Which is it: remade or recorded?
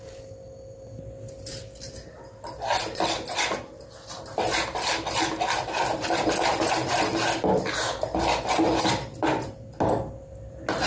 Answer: recorded